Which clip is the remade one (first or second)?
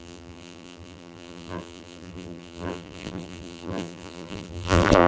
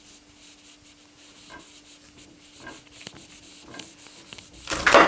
first